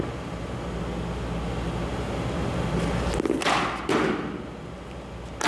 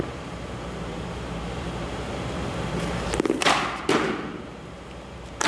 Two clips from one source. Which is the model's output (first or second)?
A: second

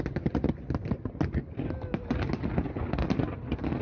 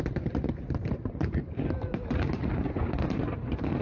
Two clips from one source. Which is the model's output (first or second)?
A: second